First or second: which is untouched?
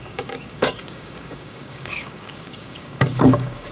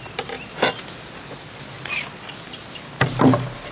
second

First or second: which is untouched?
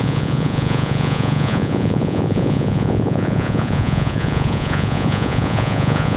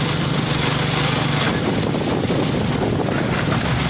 second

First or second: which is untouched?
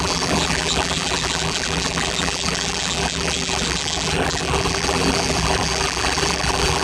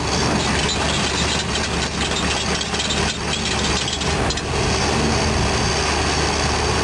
second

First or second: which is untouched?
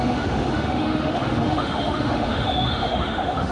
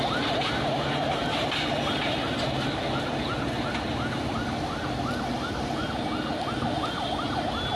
second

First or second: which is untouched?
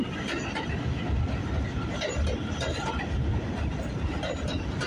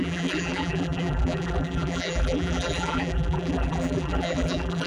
first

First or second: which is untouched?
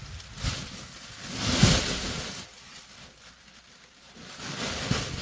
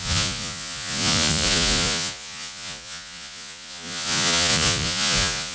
first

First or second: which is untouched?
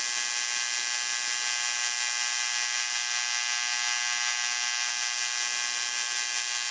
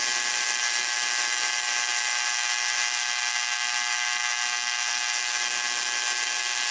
first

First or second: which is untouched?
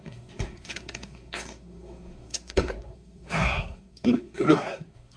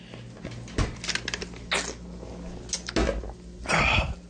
second